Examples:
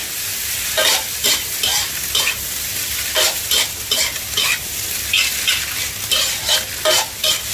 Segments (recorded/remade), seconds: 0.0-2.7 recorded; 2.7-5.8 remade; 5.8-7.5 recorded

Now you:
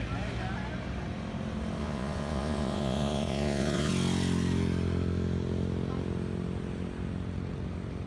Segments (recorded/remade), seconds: 0.0-1.8 recorded; 1.8-3.9 remade; 3.9-8.1 recorded

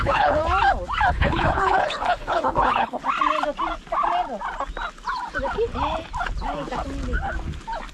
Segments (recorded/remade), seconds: 0.0-0.4 remade; 0.4-1.1 recorded; 1.1-3.0 remade; 3.0-7.9 recorded

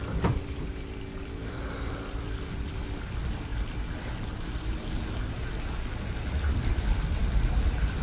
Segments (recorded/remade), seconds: 0.0-3.5 remade; 3.5-6.5 recorded; 6.5-8.0 remade

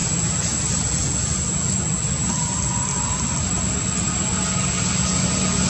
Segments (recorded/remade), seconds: 0.0-5.7 recorded